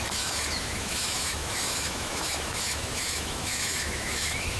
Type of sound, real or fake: fake